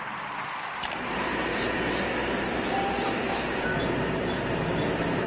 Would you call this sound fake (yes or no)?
yes